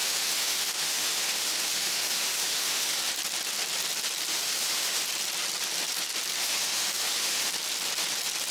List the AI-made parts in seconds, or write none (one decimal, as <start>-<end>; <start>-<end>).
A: 0.0-3.0; 4.3-5.0; 6.4-7.5